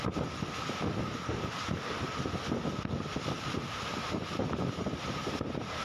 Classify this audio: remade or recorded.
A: recorded